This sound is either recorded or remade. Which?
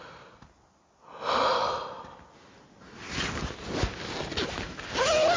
recorded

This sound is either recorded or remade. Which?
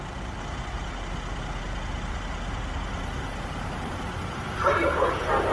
recorded